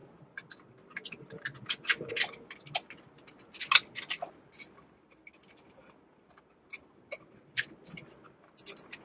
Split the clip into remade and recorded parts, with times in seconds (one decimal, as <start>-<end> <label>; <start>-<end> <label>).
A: 0.0-9.0 recorded